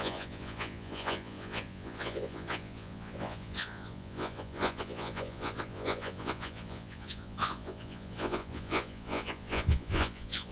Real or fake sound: fake